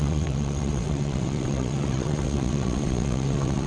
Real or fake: fake